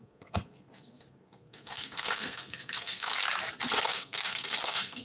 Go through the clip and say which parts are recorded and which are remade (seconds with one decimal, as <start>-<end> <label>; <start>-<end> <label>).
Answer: 0.0-3.1 remade; 3.1-3.8 recorded; 3.8-5.0 remade